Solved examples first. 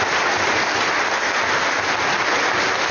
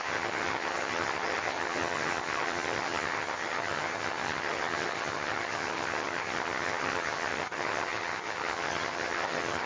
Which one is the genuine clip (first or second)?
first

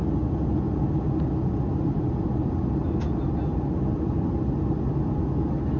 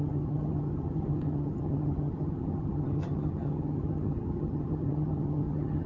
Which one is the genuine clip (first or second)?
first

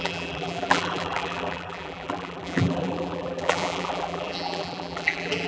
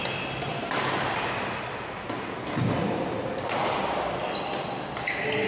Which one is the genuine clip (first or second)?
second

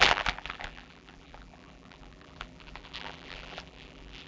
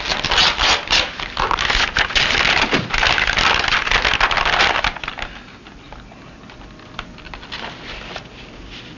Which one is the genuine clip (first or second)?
second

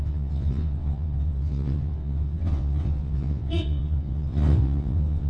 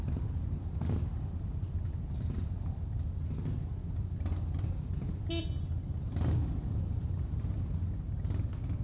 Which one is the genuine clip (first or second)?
second